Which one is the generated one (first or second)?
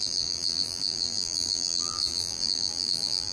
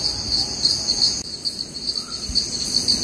first